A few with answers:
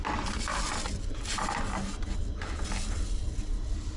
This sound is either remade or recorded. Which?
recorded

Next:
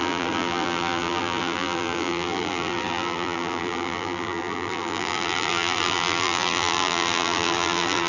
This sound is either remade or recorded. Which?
remade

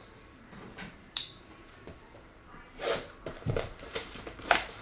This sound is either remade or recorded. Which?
remade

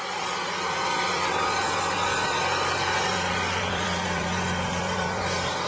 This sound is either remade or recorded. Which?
remade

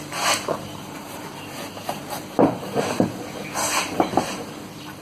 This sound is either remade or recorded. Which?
remade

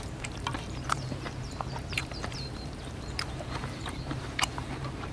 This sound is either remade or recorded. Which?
remade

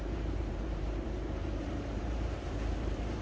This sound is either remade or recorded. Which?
remade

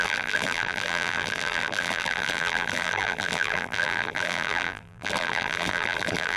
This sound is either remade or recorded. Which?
remade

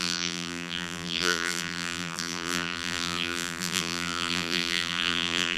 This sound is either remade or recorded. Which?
remade